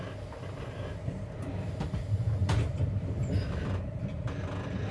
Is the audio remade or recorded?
recorded